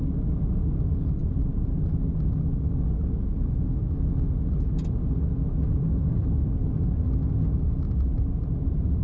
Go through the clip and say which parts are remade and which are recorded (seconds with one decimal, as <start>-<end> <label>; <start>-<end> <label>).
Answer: 0.0-9.0 recorded